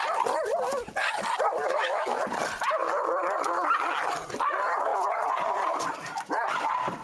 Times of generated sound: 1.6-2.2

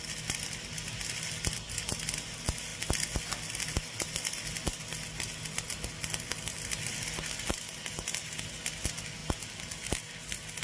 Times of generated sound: none